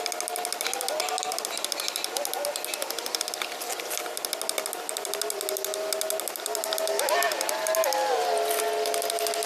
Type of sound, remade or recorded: recorded